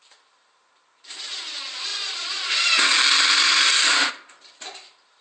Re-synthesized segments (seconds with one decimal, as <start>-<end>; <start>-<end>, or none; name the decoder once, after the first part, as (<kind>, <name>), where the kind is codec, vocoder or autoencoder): 0.0-5.2 (vocoder, BigVGAN v2)